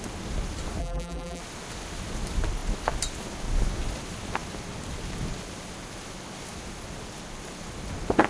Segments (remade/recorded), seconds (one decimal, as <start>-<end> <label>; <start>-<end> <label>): 0.0-0.8 recorded; 0.8-1.4 remade; 1.4-8.3 recorded